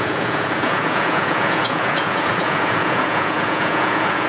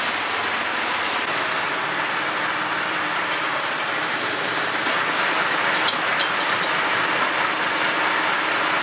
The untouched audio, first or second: second